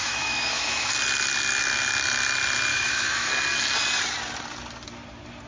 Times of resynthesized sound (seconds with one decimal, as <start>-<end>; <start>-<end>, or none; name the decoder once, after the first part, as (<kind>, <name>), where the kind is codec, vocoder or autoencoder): 0.0-0.9 (autoencoder, DAC-VAE); 2.7-3.3